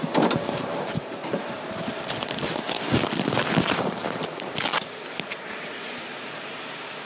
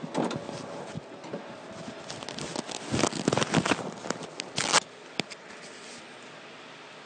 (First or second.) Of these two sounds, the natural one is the second